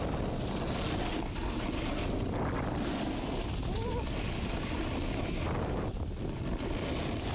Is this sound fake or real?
real